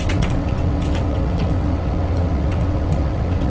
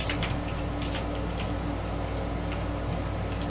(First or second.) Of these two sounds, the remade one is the first